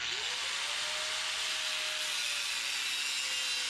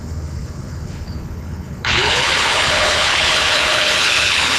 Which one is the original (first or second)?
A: first